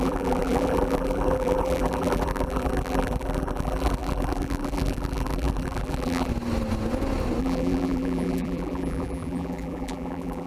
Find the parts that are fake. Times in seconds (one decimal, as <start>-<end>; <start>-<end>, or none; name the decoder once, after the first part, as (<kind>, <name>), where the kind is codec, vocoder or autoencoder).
0.0-6.3 (vocoder, BigVGAN v2); 7.4-10.5